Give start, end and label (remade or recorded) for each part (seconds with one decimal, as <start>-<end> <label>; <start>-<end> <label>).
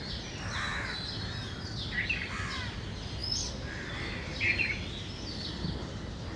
0.0-6.4 recorded